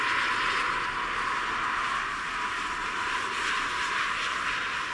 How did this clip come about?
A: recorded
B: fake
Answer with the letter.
A